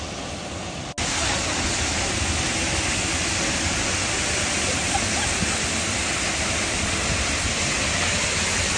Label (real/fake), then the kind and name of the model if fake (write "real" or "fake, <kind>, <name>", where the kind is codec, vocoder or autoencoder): real